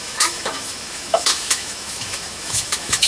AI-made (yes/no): yes